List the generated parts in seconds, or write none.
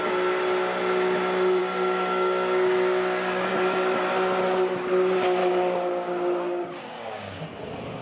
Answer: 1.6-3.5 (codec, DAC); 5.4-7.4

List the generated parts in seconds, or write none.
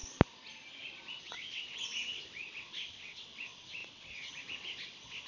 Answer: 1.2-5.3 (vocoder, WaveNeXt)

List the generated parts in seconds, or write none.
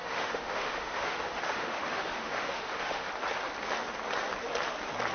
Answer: 0.0-3.1 (autoencoder, DAC-VAE)